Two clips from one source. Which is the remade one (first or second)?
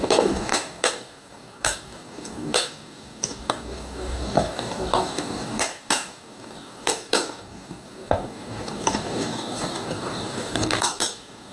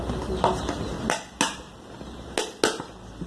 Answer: first